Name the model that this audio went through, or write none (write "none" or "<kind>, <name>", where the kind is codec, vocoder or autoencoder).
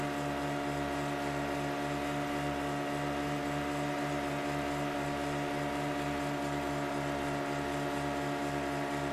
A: none